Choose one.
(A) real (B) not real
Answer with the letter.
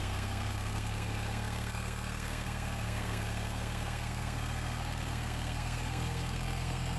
B